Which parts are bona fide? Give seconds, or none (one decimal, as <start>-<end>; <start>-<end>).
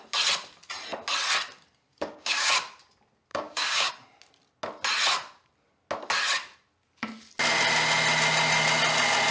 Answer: 0.0-1.9; 2.5-3.3; 3.9-9.3